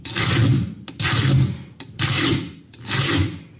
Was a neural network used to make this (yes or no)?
no